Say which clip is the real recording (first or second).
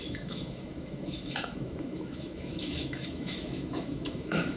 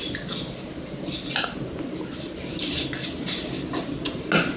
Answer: second